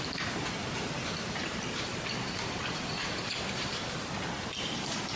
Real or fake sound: fake